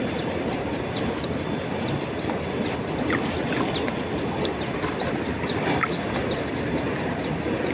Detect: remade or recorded recorded